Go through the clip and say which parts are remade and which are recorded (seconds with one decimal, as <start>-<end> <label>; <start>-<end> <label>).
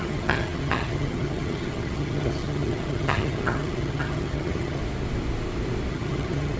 0.0-4.8 remade; 4.8-5.9 recorded; 5.9-6.6 remade